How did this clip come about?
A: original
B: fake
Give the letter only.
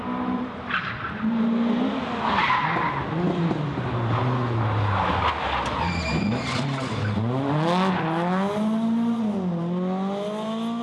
A